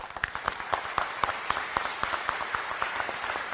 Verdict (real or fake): fake